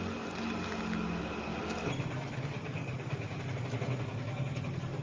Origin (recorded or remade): recorded